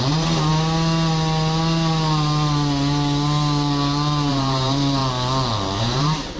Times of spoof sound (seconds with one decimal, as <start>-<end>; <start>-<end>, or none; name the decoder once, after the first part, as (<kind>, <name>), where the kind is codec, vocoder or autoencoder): 0.0-0.5 (vocoder, BigVGAN v2); 4.3-5.0; 5.8-6.4